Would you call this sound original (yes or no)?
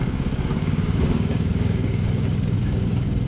no